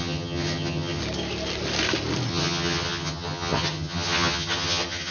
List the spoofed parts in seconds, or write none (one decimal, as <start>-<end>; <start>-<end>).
0.0-1.0; 2.3-5.1